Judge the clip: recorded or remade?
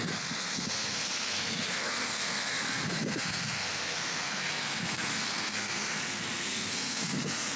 remade